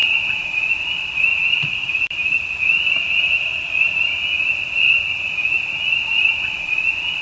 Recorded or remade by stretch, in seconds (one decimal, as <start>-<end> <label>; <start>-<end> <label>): 0.0-0.7 remade; 0.7-1.3 recorded; 1.3-1.9 remade; 1.9-7.2 recorded